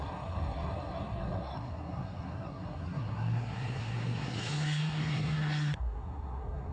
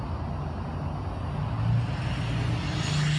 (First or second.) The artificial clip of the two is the first